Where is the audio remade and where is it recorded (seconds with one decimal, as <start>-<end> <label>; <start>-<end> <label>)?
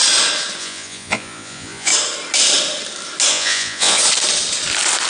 0.0-0.6 recorded; 0.6-1.9 remade; 1.9-3.3 recorded; 3.3-4.0 remade; 4.0-5.1 recorded